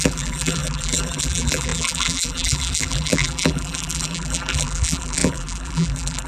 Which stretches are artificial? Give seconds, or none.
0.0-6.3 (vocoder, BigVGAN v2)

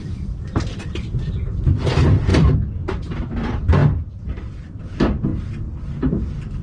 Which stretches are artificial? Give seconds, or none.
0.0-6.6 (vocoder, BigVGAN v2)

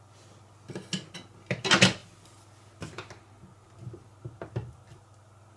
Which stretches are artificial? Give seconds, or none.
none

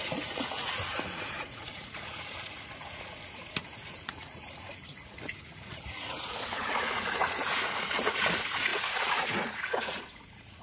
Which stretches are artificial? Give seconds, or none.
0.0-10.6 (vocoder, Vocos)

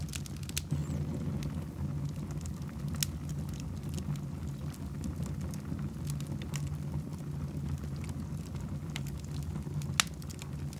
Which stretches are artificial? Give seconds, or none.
none

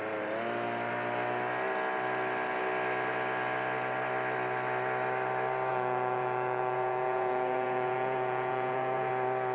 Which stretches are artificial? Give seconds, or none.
5.7-9.1 (vocoder, Vocos)

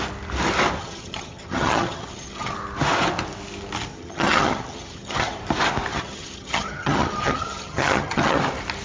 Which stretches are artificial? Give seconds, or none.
0.8-2.5 (vocoder, HiFi-GAN); 3.9-5.4; 5.9-8.4